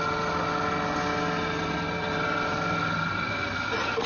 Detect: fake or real real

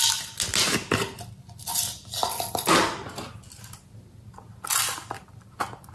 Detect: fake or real real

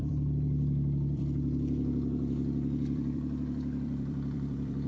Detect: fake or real fake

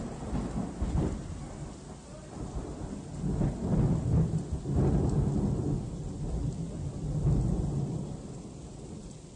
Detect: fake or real real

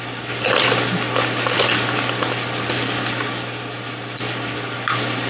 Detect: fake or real real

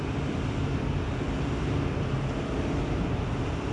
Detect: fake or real real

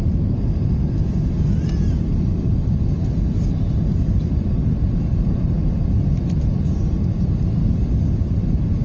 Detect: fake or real fake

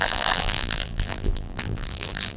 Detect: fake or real fake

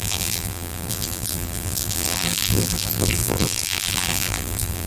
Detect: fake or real fake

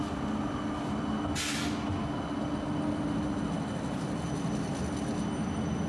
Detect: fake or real real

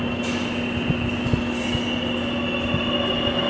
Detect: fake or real real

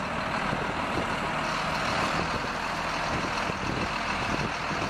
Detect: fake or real real